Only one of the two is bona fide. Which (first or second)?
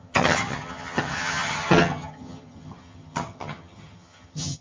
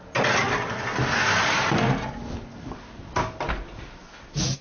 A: second